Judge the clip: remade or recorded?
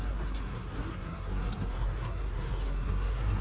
remade